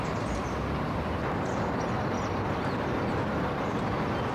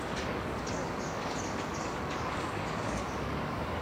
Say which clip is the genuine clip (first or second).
first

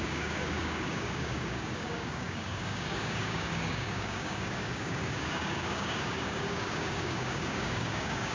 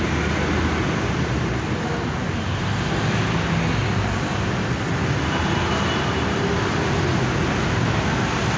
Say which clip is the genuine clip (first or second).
second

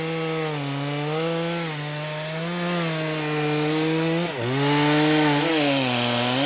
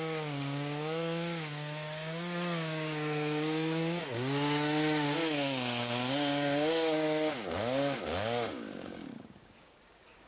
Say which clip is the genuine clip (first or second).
first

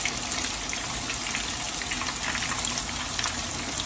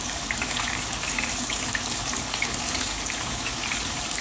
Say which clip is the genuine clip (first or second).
first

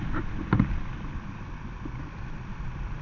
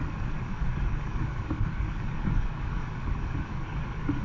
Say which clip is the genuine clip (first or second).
first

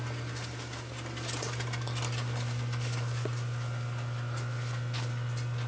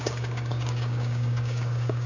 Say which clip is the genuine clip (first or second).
first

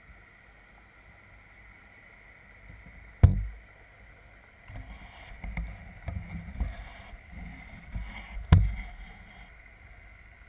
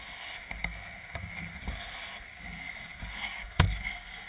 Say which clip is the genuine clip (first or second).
first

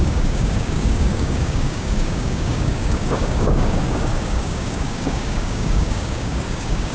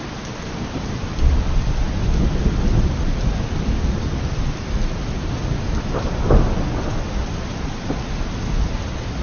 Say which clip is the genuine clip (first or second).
second